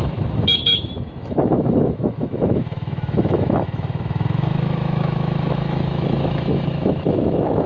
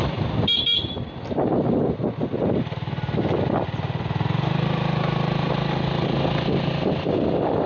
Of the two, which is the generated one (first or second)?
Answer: first